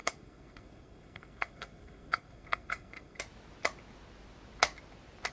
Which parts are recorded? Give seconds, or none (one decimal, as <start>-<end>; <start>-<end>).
3.2-5.3